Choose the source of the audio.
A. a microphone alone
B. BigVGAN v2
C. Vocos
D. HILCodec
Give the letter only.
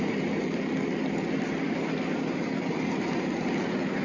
B